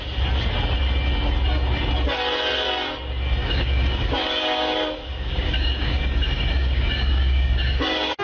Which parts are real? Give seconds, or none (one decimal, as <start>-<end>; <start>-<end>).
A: 0.0-3.4